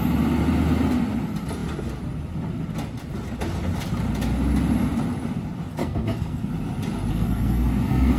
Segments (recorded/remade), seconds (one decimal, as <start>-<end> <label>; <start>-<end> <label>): 0.0-5.8 recorded; 5.8-6.5 remade; 6.5-7.1 recorded; 7.1-8.2 remade